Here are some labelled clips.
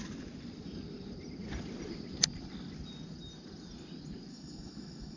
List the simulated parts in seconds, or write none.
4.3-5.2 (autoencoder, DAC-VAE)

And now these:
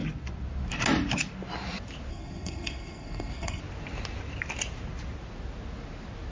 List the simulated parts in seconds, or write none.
2.1-3.6 (codec, SNAC)

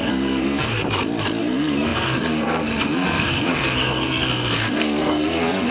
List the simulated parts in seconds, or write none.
0.0-0.7 (codec, SNAC); 1.4-5.7

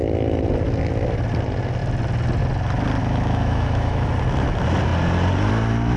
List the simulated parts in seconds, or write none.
3.0-4.1 (autoencoder, DAC-VAE)

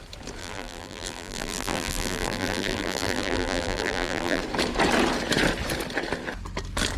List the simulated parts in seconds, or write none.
0.4-4.4 (vocoder, BigVGAN v2)